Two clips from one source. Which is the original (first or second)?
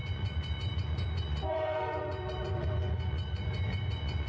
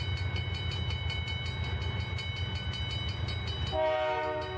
second